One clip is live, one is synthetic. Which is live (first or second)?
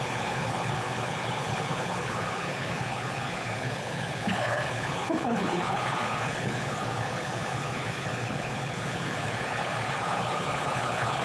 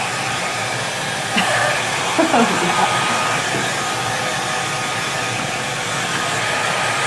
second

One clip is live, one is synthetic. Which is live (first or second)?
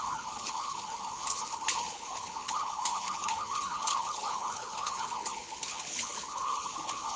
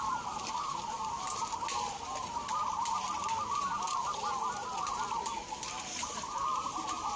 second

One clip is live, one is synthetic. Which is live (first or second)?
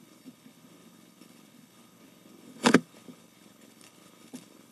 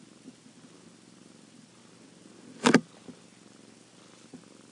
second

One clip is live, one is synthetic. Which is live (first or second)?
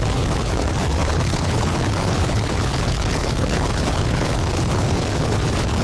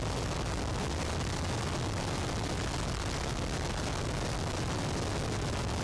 second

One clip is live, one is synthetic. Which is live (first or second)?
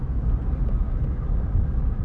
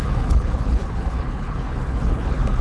first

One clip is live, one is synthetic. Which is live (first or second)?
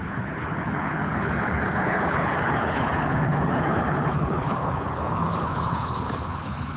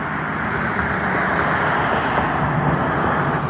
second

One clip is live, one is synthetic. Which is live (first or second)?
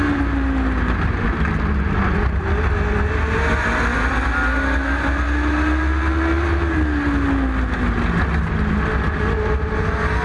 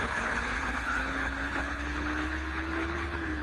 first